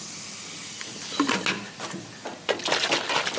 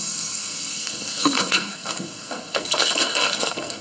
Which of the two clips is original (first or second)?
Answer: first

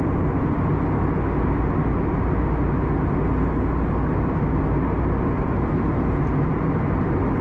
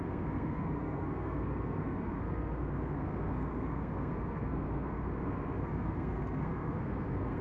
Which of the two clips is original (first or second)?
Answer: first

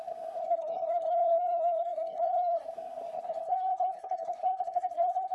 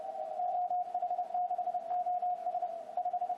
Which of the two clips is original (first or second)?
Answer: second